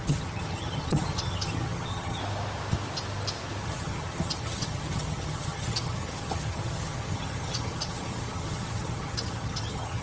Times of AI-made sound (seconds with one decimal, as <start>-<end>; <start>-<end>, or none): 0.0-2.2; 3.6-10.0